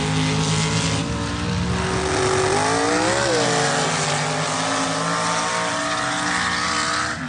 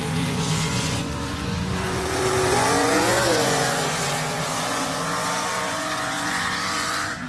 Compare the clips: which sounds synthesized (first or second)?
second